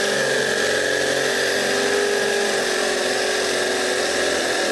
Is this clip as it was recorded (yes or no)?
yes